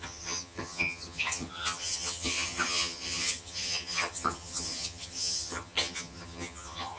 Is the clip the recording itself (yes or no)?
no